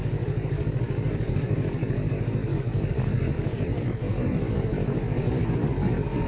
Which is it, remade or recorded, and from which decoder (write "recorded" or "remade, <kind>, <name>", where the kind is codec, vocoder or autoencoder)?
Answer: remade, codec, DAC